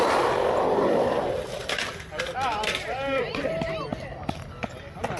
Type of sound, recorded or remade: recorded